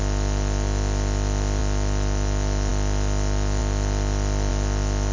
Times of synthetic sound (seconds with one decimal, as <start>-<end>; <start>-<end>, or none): none